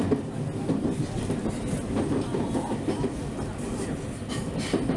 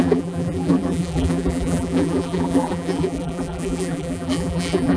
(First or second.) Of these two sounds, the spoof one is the second